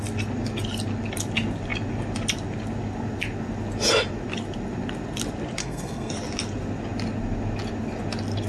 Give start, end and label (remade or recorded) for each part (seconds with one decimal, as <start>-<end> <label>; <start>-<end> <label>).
0.0-5.6 recorded; 5.6-6.1 remade; 6.1-8.5 recorded